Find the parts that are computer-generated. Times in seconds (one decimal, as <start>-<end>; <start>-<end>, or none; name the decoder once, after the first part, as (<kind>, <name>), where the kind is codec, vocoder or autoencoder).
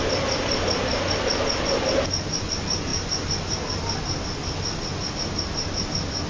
none